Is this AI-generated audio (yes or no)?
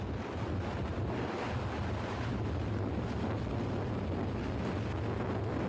no